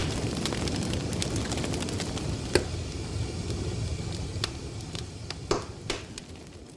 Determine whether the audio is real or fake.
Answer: real